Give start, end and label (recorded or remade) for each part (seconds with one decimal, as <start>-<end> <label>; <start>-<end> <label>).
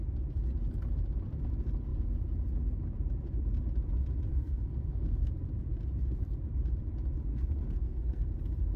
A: 0.0-4.3 recorded; 4.3-5.3 remade; 5.3-7.3 recorded; 7.3-8.3 remade; 8.3-8.8 recorded